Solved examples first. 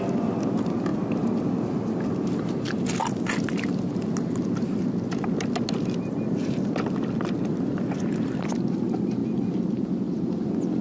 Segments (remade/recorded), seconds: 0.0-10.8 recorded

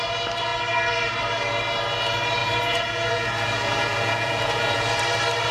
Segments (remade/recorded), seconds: 0.0-2.4 recorded; 2.4-5.0 remade; 5.0-5.5 recorded